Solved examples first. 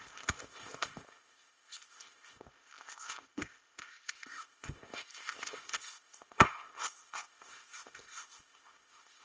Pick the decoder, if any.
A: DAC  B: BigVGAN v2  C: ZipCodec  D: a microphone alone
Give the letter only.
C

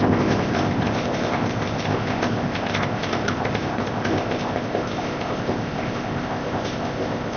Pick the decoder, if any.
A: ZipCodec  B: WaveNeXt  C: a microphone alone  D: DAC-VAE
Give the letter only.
A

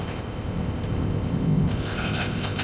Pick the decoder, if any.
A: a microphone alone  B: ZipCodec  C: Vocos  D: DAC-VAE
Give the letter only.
B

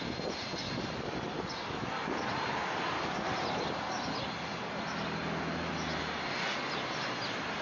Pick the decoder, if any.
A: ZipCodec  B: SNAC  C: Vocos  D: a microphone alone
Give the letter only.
D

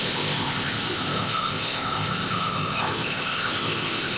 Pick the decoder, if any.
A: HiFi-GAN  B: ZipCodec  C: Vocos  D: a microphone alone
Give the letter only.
B